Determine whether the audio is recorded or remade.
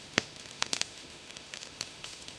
remade